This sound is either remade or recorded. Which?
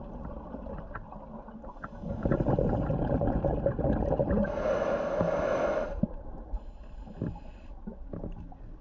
recorded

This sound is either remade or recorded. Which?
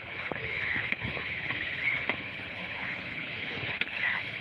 remade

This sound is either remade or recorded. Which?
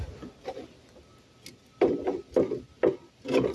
recorded